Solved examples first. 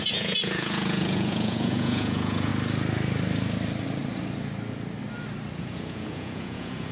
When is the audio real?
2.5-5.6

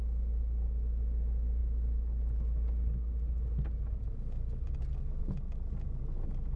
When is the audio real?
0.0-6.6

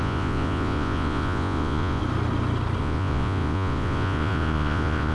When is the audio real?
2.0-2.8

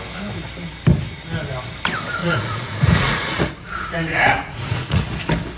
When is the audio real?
0.0-2.2; 5.0-5.6

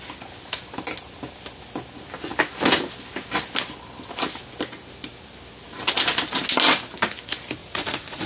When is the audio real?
0.0-7.6

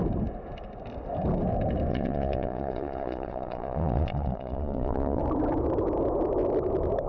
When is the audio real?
0.0-1.9; 5.2-7.1

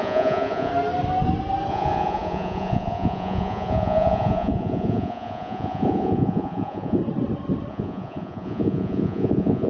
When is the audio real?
0.7-1.7; 7.0-7.7

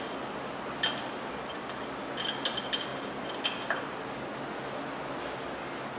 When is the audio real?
0.0-6.0